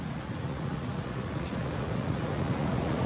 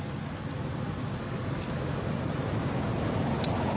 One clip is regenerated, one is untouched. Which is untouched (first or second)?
second